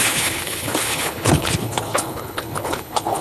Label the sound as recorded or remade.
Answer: remade